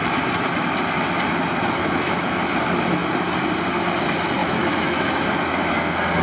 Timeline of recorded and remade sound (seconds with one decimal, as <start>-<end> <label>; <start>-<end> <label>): 0.0-1.6 recorded; 1.6-2.3 remade; 2.3-4.4 recorded; 4.4-5.8 remade; 5.8-6.2 recorded